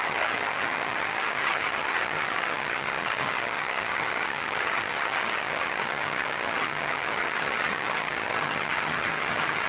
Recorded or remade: remade